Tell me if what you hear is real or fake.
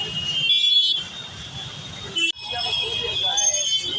real